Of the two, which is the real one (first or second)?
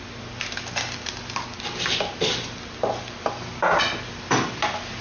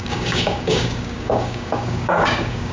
first